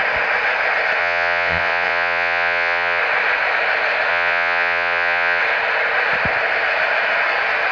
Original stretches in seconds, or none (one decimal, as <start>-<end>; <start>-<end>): 0.0-1.0; 3.0-4.1; 5.4-7.7